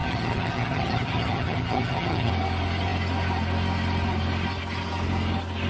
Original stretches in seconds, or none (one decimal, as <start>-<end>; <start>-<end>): 2.3-5.7